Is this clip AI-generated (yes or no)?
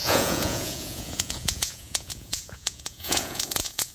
yes